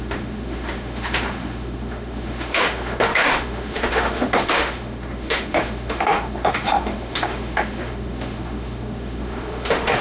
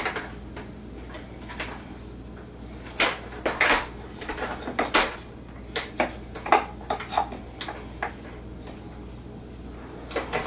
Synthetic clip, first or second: first